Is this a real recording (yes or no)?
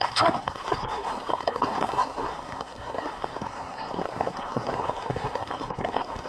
no